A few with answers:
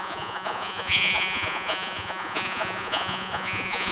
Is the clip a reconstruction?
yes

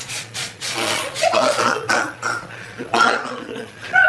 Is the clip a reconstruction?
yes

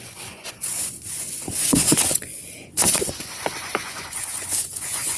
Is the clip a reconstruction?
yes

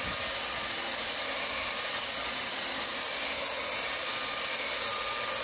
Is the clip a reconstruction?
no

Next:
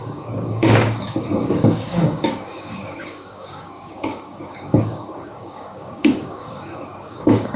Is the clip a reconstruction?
yes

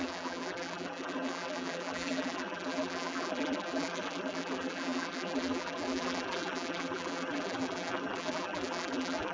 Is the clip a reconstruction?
yes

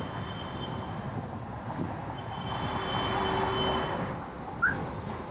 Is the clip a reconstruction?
no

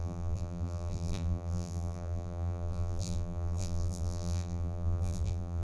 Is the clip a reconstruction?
yes